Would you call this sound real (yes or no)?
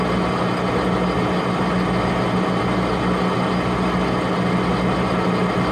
yes